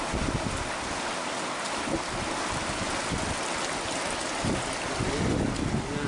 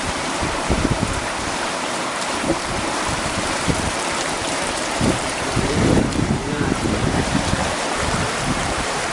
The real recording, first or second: first